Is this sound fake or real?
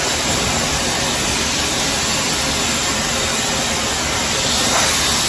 real